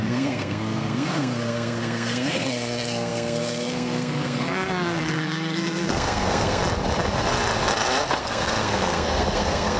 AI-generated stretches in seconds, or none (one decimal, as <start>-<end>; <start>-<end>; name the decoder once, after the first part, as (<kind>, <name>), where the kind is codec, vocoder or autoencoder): 0.0-6.6 (codec, SNAC); 8.2-9.8